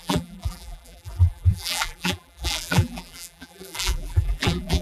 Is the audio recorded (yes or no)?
no